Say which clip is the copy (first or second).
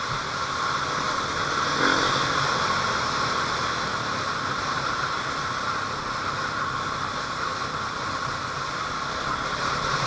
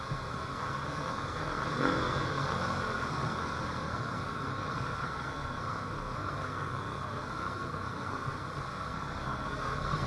second